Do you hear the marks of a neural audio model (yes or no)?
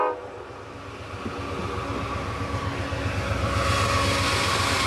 no